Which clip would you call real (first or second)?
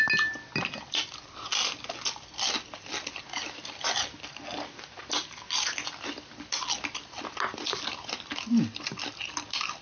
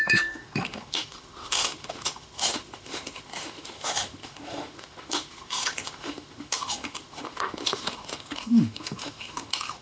first